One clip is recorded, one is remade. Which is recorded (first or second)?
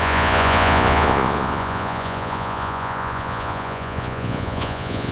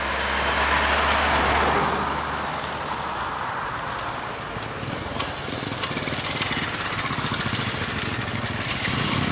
second